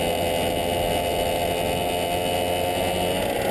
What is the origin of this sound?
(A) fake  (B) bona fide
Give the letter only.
B